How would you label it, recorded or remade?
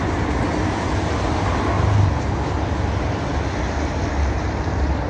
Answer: recorded